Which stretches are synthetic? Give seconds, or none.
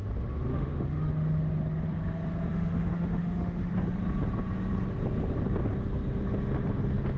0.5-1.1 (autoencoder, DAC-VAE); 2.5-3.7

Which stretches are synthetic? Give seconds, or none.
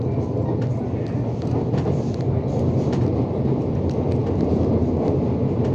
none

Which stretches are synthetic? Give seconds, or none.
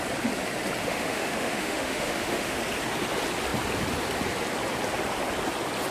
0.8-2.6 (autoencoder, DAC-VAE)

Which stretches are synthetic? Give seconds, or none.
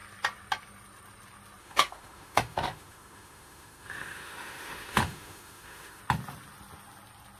1.6-6.0 (autoencoder, DAC-VAE)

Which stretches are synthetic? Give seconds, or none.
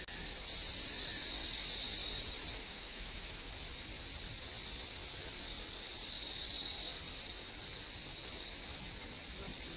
2.6-3.5 (autoencoder, DAC-VAE)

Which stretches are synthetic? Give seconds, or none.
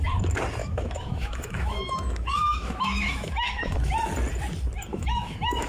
0.6-3.9 (autoencoder, DAC-VAE); 4.9-5.7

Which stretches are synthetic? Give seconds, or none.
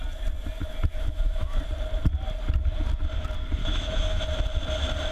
0.9-1.6 (autoencoder, DAC-VAE); 3.6-4.2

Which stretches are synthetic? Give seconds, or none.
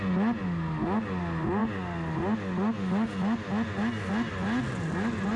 none